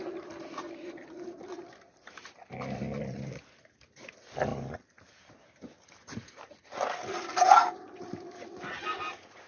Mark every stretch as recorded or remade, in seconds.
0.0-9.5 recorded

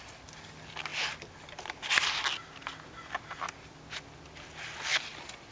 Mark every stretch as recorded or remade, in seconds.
0.0-5.5 recorded